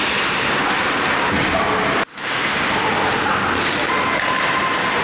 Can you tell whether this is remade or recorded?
recorded